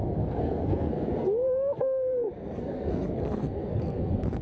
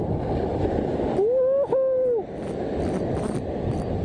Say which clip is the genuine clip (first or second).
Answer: second